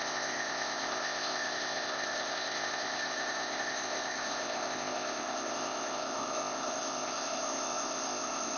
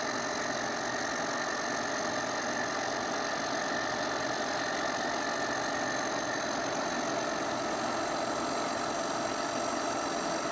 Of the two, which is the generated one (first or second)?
first